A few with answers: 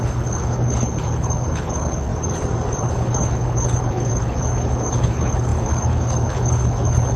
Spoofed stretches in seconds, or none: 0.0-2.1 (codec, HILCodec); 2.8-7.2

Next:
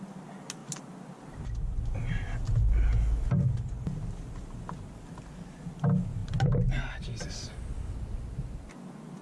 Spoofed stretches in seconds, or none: none

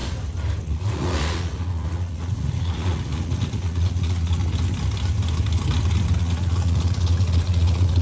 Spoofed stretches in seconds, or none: 0.6-4.4 (vocoder, Vocos); 6.2-8.0

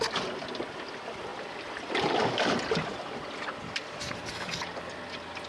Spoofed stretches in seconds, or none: 1.3-4.6 (vocoder, BigVGAN v2)

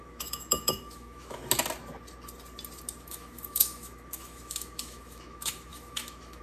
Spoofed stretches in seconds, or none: 0.0-1.4 (autoencoder, DAC-VAE); 3.0-6.4

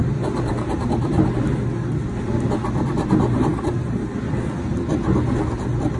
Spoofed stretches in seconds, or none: none